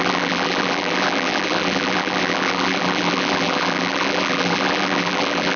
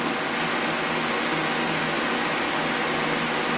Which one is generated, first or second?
first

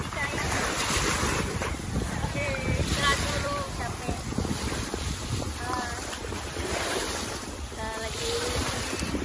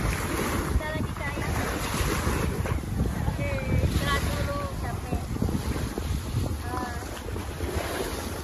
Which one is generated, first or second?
first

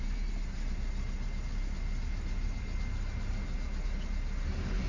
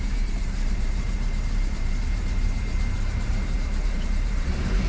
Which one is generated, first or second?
second